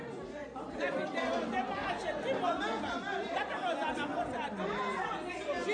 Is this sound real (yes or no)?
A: yes